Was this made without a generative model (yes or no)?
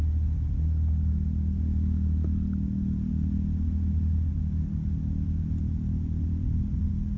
yes